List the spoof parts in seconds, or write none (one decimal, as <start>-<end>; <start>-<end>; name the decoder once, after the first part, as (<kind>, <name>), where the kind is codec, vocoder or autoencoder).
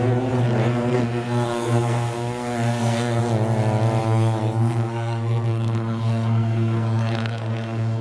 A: 0.7-3.2 (codec, SNAC); 4.0-8.0